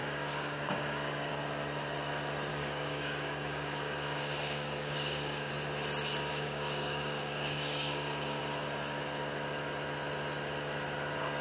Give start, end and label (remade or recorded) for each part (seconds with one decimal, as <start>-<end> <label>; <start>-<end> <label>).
0.0-1.3 remade; 1.3-2.5 recorded; 2.5-5.5 remade; 5.5-6.3 recorded; 6.3-8.4 remade; 8.4-11.4 recorded